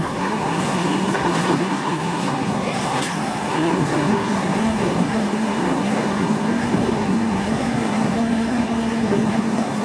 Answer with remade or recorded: remade